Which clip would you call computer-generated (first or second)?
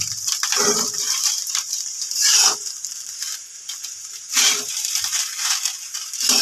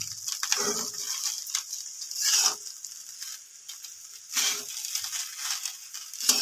first